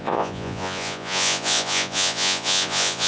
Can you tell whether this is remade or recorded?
remade